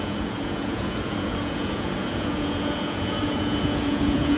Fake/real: fake